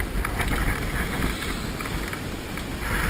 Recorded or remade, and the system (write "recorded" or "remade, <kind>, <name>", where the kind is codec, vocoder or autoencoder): recorded